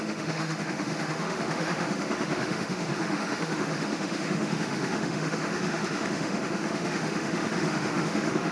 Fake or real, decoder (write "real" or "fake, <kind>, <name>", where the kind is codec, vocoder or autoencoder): fake, autoencoder, DAC-VAE